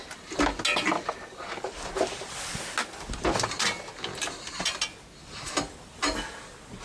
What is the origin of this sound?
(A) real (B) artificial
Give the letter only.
A